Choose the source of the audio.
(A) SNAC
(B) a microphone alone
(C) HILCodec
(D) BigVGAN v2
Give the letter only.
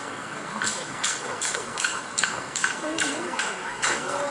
A